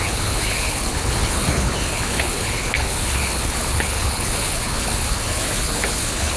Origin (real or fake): fake